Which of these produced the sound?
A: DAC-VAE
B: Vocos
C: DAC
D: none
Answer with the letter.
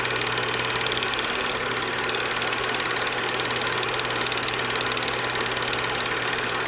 D